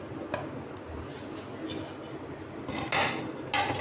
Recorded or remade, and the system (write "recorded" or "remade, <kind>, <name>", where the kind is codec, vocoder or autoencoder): recorded